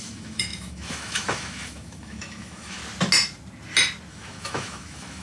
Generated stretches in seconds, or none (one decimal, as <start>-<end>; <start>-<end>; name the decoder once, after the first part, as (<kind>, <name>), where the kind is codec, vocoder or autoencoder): 0.0-2.8 (autoencoder, DAC-VAE); 4.1-5.2